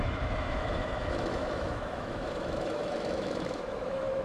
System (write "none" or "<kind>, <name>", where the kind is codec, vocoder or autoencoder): autoencoder, DAC-VAE